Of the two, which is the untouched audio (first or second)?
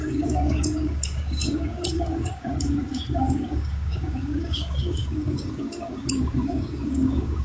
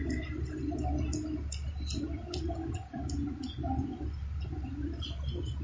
second